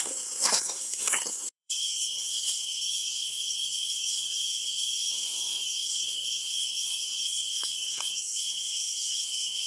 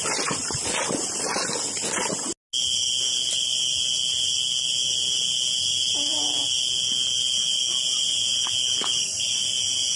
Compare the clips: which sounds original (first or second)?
second